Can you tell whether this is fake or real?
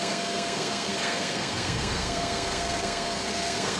fake